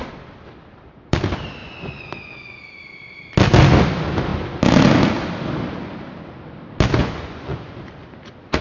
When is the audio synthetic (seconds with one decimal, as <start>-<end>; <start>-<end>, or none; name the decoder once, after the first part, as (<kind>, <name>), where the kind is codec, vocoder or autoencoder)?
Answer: 1.6-2.6 (vocoder, Vocos); 7.0-7.8